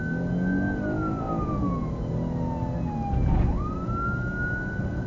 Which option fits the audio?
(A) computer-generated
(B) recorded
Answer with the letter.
B